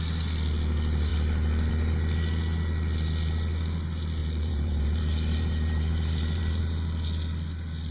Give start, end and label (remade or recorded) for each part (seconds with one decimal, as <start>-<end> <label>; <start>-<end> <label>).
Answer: 0.0-4.2 recorded; 4.2-6.6 remade; 6.6-7.9 recorded